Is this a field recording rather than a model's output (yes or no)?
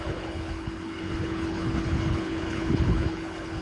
no